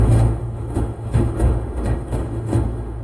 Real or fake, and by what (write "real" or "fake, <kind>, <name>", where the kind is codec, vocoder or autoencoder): fake, autoencoder, DAC-VAE